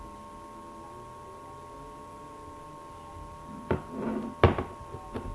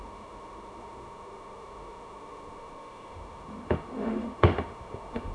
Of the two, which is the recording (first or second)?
first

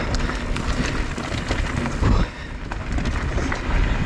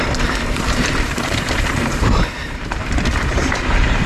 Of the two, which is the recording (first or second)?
first